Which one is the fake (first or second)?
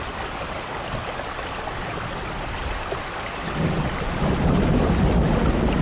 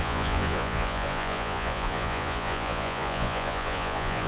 second